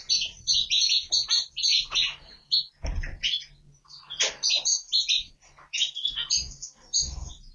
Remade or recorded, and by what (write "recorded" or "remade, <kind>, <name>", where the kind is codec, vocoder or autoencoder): recorded